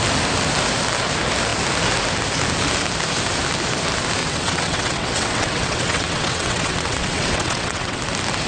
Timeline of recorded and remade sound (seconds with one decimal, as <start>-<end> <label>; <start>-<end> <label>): 0.0-4.2 recorded; 4.2-8.0 remade; 8.0-8.5 recorded